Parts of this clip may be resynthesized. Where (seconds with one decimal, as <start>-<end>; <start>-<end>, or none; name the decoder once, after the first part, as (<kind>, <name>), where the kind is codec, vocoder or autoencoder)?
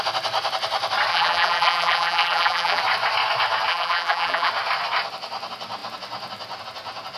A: 1.1-2.8 (vocoder, BigVGAN v2); 3.7-4.5